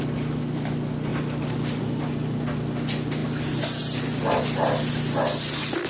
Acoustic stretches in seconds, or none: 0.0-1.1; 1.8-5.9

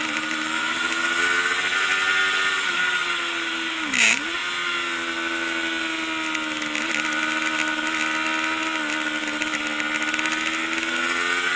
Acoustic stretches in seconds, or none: 0.8-11.6

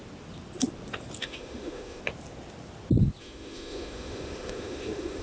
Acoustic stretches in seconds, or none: 0.0-1.2; 2.0-3.2

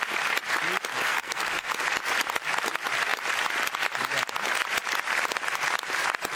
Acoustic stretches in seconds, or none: 0.0-0.9; 1.7-6.4

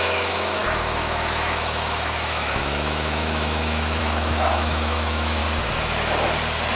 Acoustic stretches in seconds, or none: 5.4-6.8